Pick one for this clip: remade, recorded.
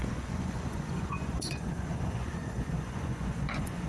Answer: remade